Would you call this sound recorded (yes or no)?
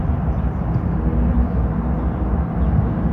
yes